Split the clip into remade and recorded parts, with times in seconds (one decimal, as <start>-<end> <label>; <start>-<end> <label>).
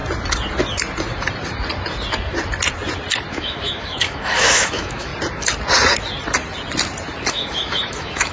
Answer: 0.0-3.3 recorded; 3.3-5.1 remade; 5.1-7.3 recorded; 7.3-8.3 remade